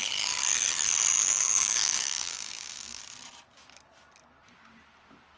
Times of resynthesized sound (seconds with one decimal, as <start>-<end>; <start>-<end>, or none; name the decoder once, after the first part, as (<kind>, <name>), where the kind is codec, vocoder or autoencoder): 1.2-3.0 (codec, DAC)